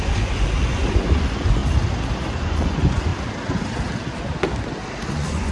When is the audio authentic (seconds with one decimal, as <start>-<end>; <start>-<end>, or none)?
1.6-2.4; 3.1-5.1